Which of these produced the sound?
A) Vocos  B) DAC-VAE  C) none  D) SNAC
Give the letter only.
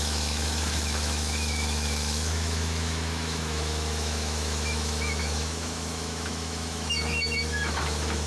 B